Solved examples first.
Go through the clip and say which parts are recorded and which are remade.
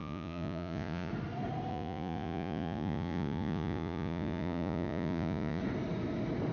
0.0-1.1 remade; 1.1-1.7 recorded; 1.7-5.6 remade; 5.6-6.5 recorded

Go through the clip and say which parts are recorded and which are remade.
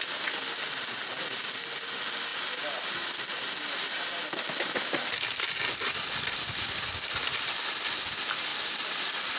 0.0-2.3 recorded; 2.3-3.1 remade; 3.1-8.5 recorded; 8.5-9.4 remade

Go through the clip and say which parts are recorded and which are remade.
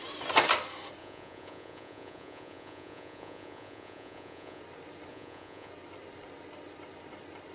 0.0-1.0 recorded; 1.0-4.6 remade; 4.6-5.1 recorded; 5.1-5.7 remade; 5.7-7.5 recorded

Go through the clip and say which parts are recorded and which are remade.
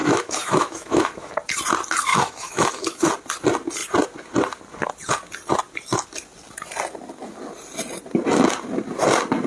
0.0-1.3 remade; 1.3-2.1 recorded; 2.1-3.1 remade; 3.1-9.5 recorded